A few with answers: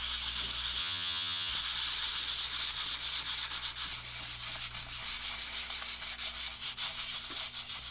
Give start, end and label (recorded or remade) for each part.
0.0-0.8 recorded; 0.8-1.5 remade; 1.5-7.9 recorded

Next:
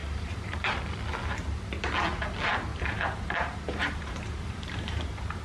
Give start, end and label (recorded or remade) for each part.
0.0-0.8 remade; 0.8-2.7 recorded; 2.7-5.0 remade; 5.0-5.4 recorded

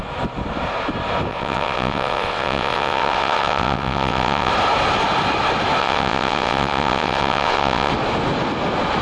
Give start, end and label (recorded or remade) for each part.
0.0-1.3 recorded; 1.3-4.5 remade; 4.5-5.8 recorded; 5.8-7.9 remade; 7.9-9.0 recorded

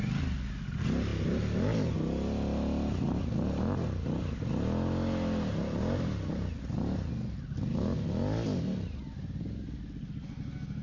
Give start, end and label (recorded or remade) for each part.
0.0-10.8 recorded

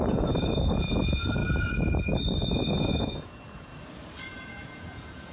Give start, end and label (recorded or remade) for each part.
0.0-1.4 remade; 1.4-2.5 recorded; 2.5-3.7 remade; 3.7-4.2 recorded; 4.2-5.3 remade

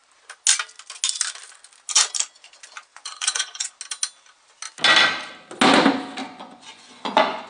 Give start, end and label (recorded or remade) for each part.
0.0-2.9 recorded; 2.9-3.7 remade; 3.7-6.2 recorded; 6.2-7.5 remade